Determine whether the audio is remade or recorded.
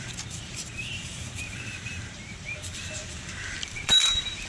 remade